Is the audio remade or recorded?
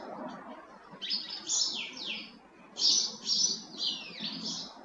recorded